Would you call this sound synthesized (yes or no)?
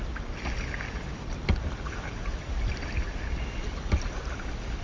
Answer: no